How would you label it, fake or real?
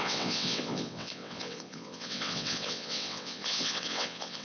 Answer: fake